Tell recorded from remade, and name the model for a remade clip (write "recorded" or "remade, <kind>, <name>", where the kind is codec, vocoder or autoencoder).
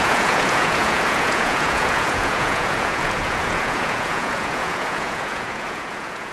remade, vocoder, Vocos